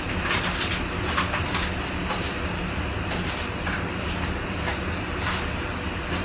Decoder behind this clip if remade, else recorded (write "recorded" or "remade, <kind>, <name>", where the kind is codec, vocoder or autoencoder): recorded